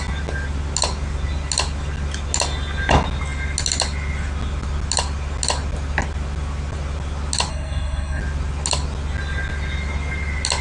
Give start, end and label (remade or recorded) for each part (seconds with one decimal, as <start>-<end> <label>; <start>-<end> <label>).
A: 0.0-7.5 recorded; 7.5-8.2 remade; 8.2-10.6 recorded

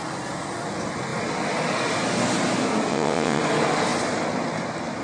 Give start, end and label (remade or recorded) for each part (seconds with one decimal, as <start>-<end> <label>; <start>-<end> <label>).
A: 0.0-2.9 recorded; 2.9-3.4 remade; 3.4-5.0 recorded

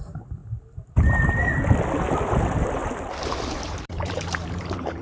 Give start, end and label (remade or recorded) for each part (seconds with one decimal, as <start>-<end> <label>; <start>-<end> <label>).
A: 0.0-0.4 remade; 0.4-2.4 recorded; 2.4-2.8 remade; 2.8-3.5 recorded; 3.5-5.0 remade